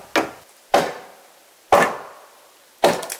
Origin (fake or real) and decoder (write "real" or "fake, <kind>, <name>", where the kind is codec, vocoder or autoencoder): real